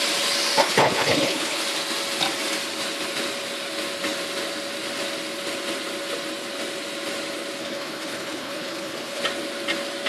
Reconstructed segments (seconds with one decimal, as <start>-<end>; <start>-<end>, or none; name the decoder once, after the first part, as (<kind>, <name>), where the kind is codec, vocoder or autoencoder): 0.6-1.6 (codec, HILCodec); 7.6-9.2